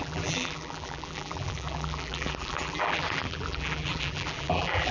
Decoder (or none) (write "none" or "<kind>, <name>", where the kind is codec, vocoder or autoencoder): vocoder, BigVGAN v2